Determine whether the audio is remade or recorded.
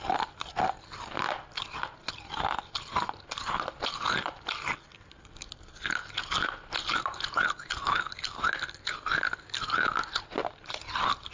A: recorded